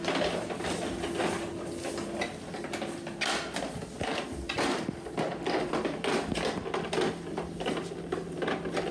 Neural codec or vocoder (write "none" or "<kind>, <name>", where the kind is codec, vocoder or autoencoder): none